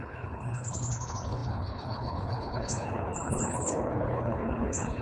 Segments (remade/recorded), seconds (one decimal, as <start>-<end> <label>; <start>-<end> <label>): 0.0-5.0 remade